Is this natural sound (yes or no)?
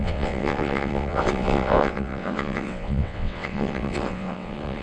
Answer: no